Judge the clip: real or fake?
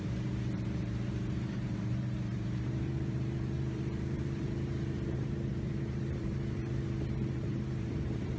fake